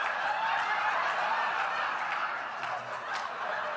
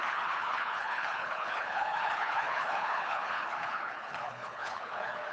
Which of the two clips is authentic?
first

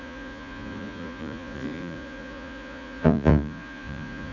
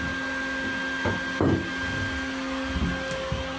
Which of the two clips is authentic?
second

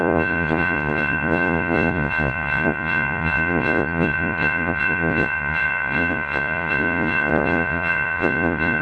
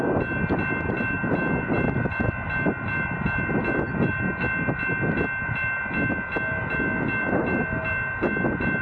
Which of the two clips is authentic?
second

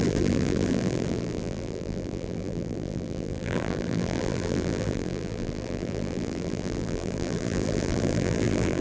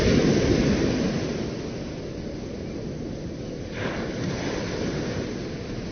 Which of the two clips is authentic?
second